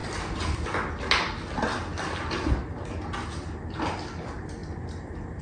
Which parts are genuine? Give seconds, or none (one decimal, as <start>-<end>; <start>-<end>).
1.1-4.6